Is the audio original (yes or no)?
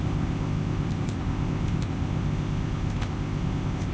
no